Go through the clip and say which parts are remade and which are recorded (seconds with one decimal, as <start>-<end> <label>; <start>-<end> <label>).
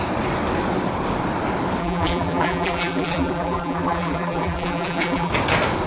0.0-1.8 recorded; 1.8-5.3 remade; 5.3-5.9 recorded